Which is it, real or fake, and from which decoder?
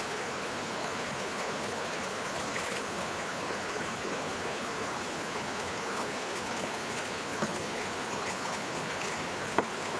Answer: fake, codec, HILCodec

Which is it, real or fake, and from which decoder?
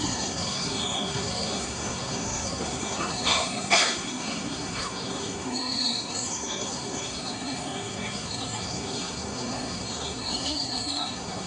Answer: fake, codec, SNAC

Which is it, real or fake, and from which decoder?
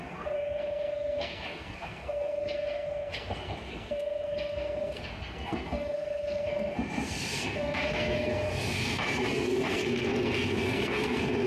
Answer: fake, codec, SNAC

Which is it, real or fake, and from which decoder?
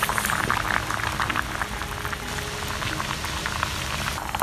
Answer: real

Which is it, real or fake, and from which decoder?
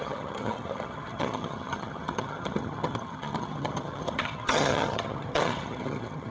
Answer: fake, vocoder, HiFi-GAN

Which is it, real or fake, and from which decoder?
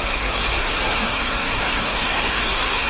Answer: fake, codec, SNAC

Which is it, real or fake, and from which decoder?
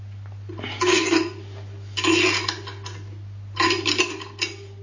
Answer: real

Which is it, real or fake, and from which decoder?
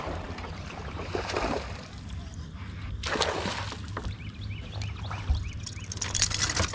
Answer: real